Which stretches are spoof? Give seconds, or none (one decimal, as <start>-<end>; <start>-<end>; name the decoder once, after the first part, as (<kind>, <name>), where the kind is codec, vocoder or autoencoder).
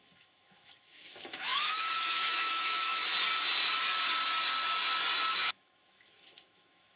0.0-3.0 (autoencoder, DAC-VAE); 5.3-7.0